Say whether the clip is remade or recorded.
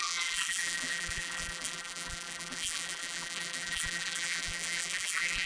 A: remade